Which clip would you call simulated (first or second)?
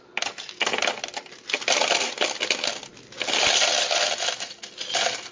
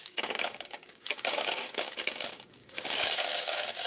second